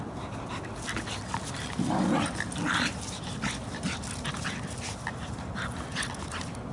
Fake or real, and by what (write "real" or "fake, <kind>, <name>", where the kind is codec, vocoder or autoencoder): real